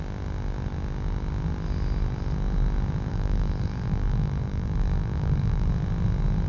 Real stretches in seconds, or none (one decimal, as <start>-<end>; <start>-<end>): 0.0-3.1; 5.7-6.5